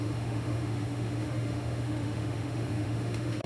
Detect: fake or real fake